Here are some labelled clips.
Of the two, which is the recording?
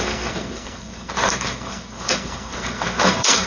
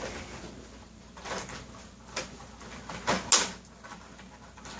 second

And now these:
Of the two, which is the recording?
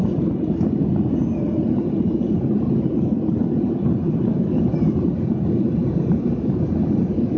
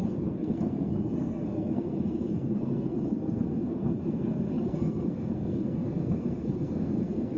first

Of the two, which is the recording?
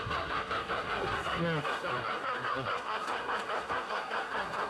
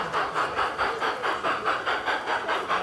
second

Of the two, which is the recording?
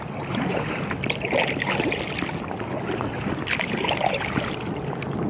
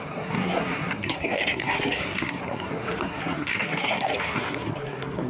first